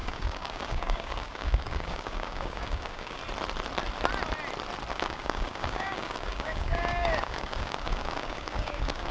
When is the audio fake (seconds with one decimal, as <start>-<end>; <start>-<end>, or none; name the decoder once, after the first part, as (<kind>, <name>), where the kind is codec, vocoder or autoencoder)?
0.0-3.2 (codec, DAC); 4.9-9.1